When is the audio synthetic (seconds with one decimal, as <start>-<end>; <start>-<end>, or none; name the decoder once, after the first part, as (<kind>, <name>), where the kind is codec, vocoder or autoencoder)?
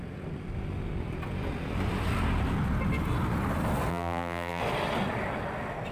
3.9-4.6 (vocoder, BigVGAN v2)